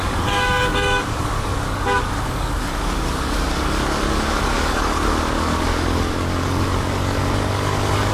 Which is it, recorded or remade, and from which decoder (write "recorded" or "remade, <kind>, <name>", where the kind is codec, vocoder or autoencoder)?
remade, codec, DAC